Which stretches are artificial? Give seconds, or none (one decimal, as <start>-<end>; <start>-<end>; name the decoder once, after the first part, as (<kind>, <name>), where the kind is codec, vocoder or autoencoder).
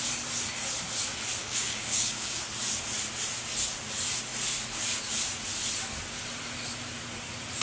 1.4-2.4 (codec, DAC)